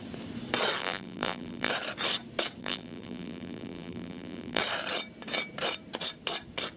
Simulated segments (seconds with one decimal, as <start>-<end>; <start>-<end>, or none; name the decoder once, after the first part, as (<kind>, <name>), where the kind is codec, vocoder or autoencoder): 0.8-1.7 (vocoder, BigVGAN v2); 2.6-4.6